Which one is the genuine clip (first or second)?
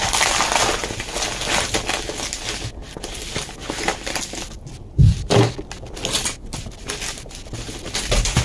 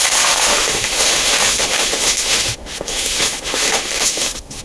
first